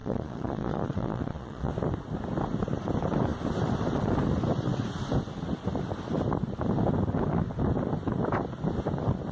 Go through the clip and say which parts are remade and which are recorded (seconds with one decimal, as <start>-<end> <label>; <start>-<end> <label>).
0.0-1.7 remade; 1.7-9.3 recorded